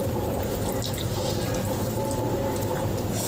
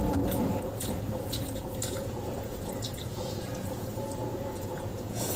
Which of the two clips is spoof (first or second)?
second